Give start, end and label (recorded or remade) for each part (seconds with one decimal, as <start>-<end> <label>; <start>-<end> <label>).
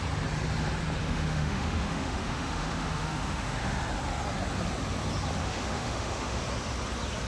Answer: 0.0-1.0 recorded; 1.0-3.8 remade; 3.8-5.4 recorded; 5.4-6.4 remade; 6.4-7.3 recorded